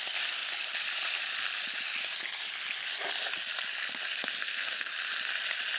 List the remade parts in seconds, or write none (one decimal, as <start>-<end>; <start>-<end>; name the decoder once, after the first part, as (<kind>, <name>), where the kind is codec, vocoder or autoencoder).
4.4-4.9 (codec, SNAC)